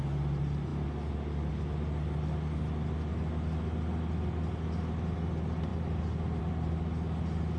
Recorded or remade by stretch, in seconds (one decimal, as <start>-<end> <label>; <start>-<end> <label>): 0.0-7.6 recorded